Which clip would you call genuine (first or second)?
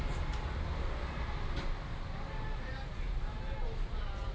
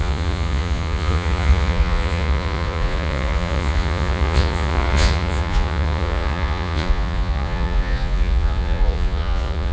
first